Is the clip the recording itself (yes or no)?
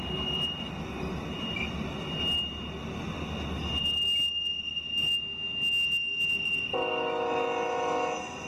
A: yes